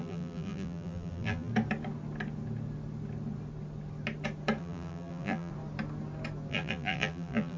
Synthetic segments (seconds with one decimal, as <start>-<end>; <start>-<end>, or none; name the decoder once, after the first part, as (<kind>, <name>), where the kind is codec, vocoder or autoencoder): 0.0-1.5 (vocoder, BigVGAN v2); 4.6-5.5; 6.5-7.6